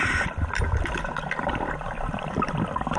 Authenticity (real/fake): real